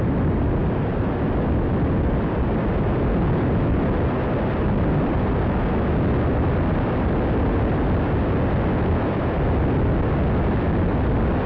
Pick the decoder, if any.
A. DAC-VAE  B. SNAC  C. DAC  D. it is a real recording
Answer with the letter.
D